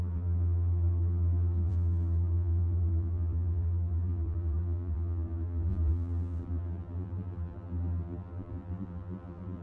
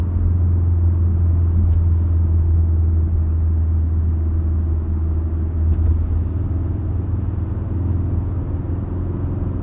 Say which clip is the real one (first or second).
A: second